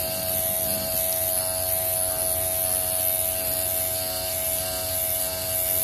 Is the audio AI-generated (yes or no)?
no